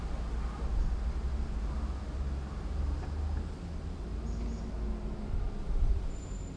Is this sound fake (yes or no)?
no